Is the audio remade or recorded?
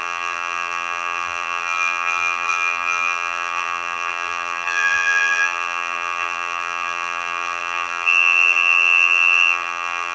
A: remade